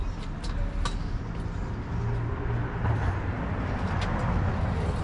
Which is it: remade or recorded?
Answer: recorded